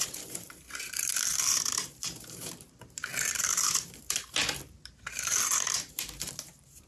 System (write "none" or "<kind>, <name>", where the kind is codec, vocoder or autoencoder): vocoder, BigVGAN v2